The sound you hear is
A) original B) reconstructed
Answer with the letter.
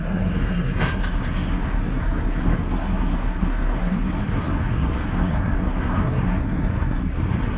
B